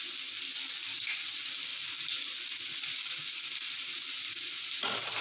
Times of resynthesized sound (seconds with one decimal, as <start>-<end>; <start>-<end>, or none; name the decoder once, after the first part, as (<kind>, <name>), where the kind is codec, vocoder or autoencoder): none

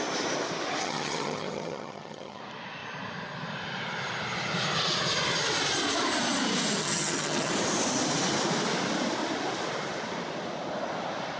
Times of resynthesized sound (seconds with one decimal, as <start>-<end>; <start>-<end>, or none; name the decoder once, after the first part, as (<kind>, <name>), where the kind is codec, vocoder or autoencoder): 0.8-2.4 (vocoder, HiFi-GAN); 6.8-7.5

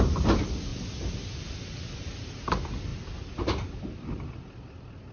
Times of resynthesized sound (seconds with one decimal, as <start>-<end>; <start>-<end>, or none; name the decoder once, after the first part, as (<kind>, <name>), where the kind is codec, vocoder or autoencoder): none